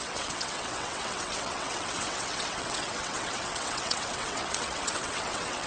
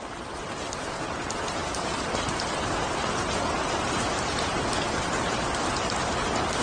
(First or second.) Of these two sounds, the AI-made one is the first